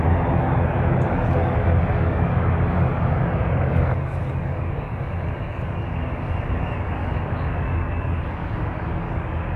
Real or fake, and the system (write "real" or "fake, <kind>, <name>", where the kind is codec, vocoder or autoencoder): fake, codec, DAC